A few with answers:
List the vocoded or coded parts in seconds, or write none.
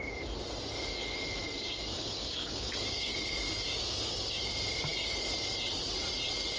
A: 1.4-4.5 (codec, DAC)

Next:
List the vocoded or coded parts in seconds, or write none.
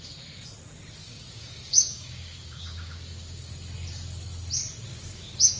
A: 1.0-3.5 (codec, DAC); 4.9-5.6